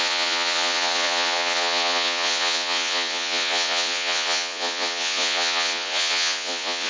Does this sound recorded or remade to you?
remade